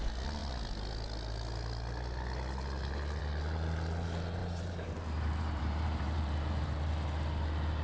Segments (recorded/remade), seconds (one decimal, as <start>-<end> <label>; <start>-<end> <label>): 0.0-4.4 recorded; 4.4-6.9 remade; 6.9-7.8 recorded